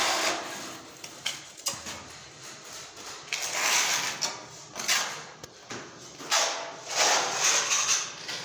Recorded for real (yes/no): yes